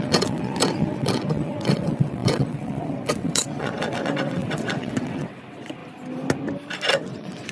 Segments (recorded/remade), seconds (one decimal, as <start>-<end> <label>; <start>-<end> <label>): 0.0-5.8 remade; 5.8-6.9 recorded; 6.9-7.5 remade